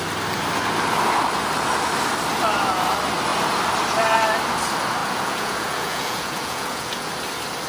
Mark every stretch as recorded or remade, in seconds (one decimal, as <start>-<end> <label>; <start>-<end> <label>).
0.0-5.0 recorded; 5.0-7.1 remade; 7.1-7.7 recorded